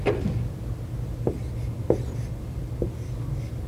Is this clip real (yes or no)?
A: yes